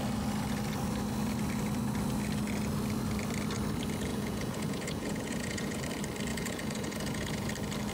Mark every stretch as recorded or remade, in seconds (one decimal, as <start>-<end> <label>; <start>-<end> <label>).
0.0-4.1 recorded; 4.1-5.8 remade; 5.8-6.3 recorded; 6.3-7.5 remade; 7.5-7.9 recorded